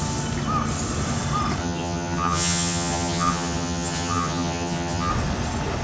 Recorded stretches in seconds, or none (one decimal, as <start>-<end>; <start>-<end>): 0.0-1.6; 5.1-5.8